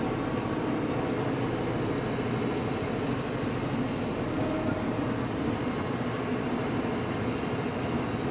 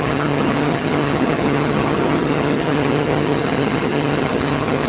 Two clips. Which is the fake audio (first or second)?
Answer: second